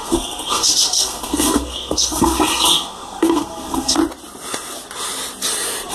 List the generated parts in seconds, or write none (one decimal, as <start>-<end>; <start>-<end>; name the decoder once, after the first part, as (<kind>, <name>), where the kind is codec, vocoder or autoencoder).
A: 0.0-4.0 (codec, SNAC)